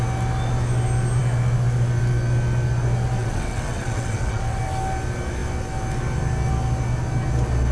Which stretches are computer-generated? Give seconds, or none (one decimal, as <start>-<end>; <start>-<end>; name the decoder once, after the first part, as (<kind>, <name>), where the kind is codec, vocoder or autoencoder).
3.2-4.6 (vocoder, WaveNeXt)